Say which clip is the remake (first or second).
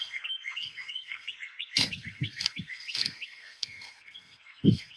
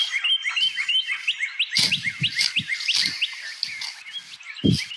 first